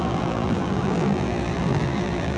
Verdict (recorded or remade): remade